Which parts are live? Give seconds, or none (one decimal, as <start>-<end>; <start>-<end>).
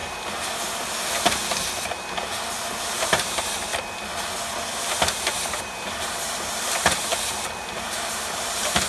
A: 0.0-2.8; 3.7-5.6; 7.1-7.6